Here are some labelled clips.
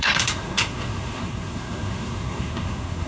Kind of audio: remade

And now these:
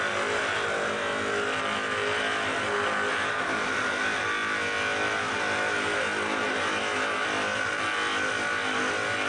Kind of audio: recorded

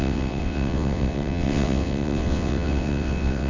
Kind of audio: remade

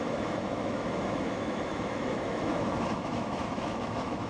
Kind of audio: remade